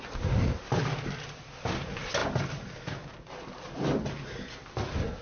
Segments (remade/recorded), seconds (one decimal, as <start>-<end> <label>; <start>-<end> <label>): 0.0-5.2 recorded